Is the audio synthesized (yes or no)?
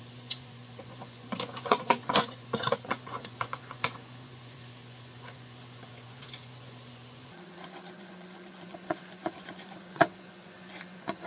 yes